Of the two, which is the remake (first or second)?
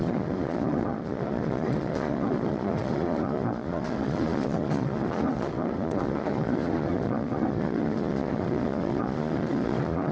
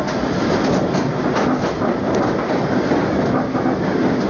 first